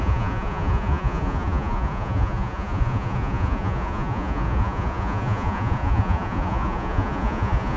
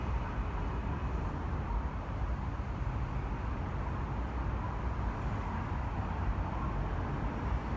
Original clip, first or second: second